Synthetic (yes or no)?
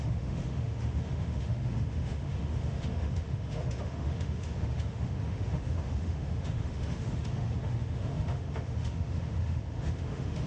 yes